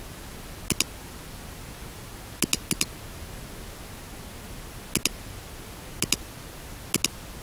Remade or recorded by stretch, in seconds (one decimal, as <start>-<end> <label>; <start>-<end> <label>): 0.0-7.4 recorded